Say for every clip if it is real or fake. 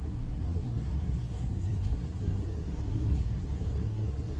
fake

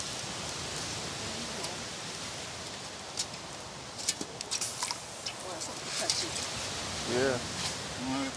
real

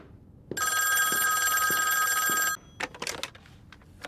real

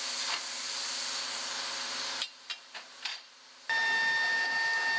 real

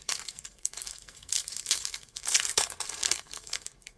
fake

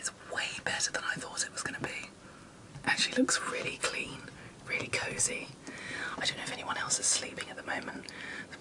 real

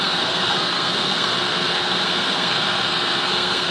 fake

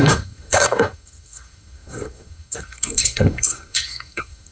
fake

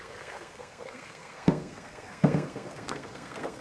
fake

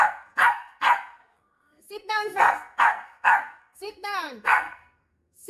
fake